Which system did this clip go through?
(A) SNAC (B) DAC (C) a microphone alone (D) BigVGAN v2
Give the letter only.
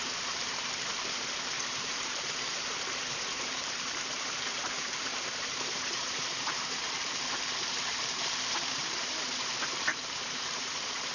D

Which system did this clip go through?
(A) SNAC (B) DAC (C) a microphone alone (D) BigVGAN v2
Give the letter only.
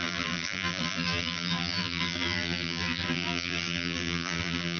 D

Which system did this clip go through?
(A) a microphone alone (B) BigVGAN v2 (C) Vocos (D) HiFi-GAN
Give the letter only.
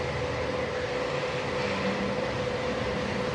A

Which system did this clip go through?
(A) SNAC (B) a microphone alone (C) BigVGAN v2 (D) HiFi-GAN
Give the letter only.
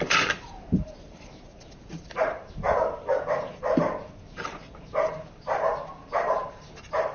C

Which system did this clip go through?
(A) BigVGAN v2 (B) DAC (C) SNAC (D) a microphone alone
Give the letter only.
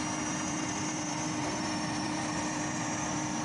A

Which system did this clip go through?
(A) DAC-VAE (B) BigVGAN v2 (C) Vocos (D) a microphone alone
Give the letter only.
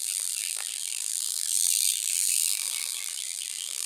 B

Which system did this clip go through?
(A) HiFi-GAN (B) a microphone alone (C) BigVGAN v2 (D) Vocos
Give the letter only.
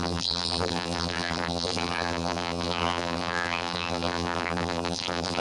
C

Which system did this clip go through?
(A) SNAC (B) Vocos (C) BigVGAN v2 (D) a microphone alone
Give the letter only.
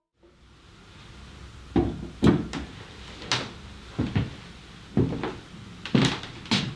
D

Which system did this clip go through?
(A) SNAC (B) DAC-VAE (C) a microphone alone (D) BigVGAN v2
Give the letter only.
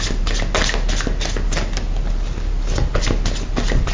C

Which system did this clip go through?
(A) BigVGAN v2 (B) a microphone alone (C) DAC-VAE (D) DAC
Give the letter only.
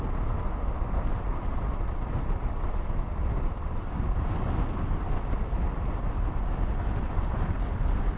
B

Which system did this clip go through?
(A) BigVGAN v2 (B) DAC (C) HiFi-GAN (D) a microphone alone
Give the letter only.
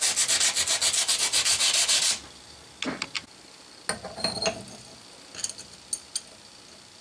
D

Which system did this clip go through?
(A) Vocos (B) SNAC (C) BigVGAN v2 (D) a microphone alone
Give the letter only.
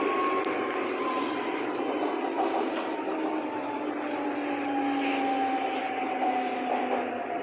D